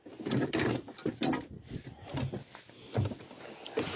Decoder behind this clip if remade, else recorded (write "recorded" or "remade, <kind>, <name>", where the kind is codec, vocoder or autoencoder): recorded